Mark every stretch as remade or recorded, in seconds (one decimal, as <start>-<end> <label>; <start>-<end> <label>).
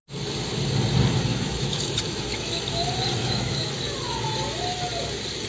0.0-1.3 recorded; 1.3-2.6 remade; 2.6-3.2 recorded; 3.2-3.7 remade; 3.7-5.5 recorded